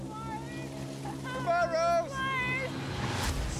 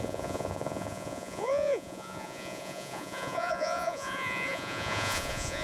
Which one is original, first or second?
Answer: first